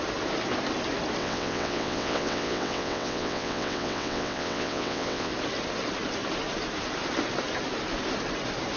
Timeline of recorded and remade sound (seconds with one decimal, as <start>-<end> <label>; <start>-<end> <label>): 0.0-1.2 recorded; 1.2-5.3 remade; 5.3-8.8 recorded